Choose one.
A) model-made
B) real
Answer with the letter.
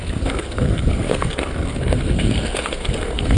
A